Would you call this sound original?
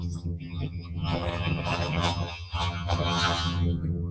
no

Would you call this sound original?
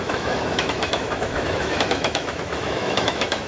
no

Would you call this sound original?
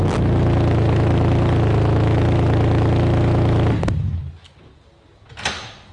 yes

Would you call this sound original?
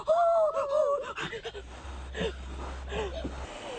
yes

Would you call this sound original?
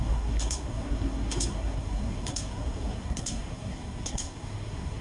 no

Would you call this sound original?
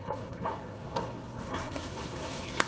no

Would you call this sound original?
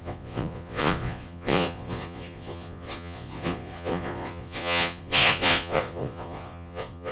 no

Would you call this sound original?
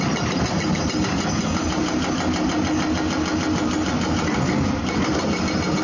yes